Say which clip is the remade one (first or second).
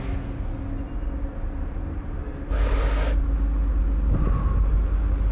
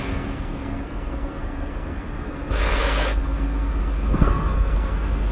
second